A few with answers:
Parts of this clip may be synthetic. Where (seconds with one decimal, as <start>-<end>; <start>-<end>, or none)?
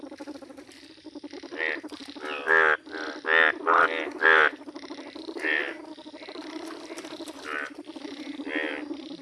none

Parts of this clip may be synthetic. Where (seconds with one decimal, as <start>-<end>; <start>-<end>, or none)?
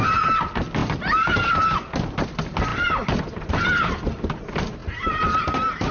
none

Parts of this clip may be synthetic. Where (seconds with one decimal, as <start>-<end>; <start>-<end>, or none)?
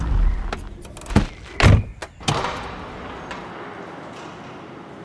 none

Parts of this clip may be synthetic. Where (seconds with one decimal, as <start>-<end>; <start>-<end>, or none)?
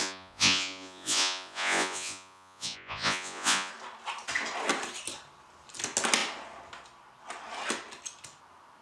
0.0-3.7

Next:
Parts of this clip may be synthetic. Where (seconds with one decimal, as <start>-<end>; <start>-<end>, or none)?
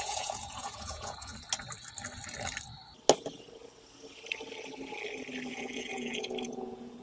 0.0-1.3; 5.5-7.0